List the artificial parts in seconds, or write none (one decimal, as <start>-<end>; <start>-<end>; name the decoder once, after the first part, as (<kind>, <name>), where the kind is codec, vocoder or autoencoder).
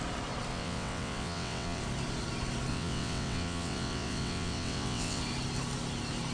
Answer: 0.5-1.8 (vocoder, WaveNeXt); 2.7-5.2